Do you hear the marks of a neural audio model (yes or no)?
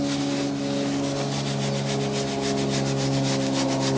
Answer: no